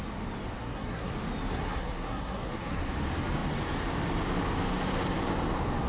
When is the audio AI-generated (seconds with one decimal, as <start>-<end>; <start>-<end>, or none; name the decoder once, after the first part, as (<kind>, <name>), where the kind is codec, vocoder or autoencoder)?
0.6-1.1 (codec, SNAC); 1.5-2.8